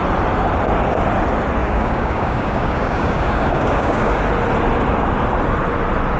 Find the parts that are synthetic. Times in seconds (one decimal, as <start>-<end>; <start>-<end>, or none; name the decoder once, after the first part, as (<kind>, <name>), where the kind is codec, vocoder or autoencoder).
1.6-4.2 (codec, DAC)